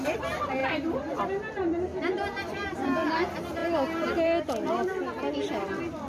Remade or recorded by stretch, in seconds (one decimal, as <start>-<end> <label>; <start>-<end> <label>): 0.0-1.9 remade; 1.9-2.5 recorded; 2.5-6.1 remade